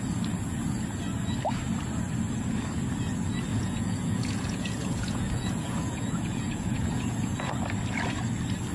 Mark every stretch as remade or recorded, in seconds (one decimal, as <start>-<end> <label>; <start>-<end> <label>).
0.0-3.5 recorded; 3.5-7.5 remade; 7.5-8.7 recorded